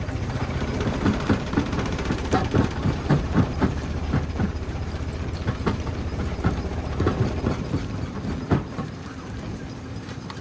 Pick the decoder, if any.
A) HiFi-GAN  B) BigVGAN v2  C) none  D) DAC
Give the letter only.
B